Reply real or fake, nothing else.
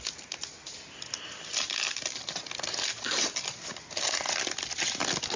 real